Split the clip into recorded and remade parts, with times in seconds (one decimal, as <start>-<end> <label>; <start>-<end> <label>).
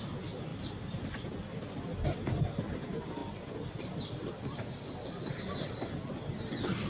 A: 0.0-0.5 recorded; 0.5-1.2 remade; 1.2-3.2 recorded; 3.2-5.7 remade; 5.7-6.9 recorded